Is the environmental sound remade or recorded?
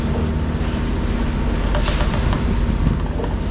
recorded